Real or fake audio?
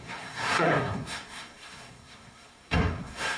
fake